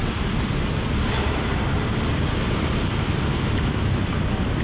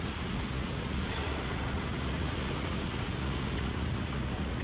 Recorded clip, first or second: first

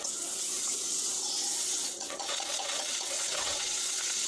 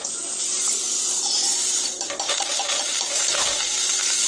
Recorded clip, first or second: second